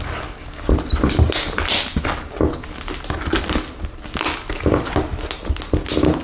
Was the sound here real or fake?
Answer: real